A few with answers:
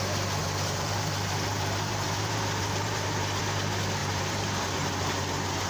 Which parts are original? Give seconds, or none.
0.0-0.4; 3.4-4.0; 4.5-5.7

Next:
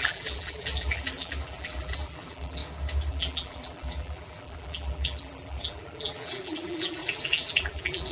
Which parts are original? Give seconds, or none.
2.6-3.1

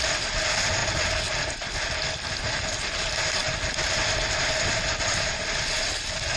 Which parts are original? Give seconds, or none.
0.0-6.4

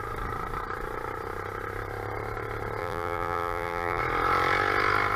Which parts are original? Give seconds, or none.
0.0-2.8; 4.0-5.2

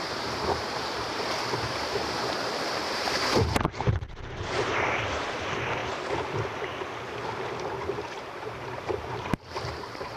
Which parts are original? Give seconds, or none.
5.8-7.5

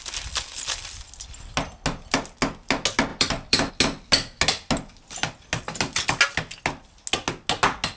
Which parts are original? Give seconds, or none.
0.0-3.1; 3.7-8.0

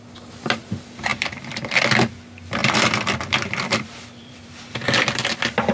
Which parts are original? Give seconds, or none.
0.0-1.1; 1.8-2.6; 5.3-5.7

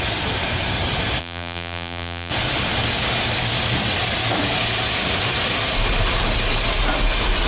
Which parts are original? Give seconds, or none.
0.0-1.2; 2.3-7.5